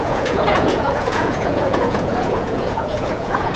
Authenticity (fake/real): fake